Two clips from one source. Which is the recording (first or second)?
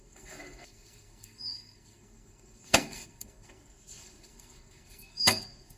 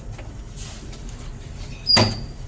second